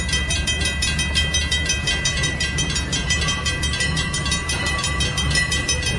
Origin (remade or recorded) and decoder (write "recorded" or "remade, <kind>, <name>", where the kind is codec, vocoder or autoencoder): remade, vocoder, BigVGAN v2